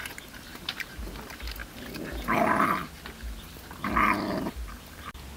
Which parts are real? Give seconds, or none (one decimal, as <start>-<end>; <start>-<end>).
0.0-0.5; 1.2-5.4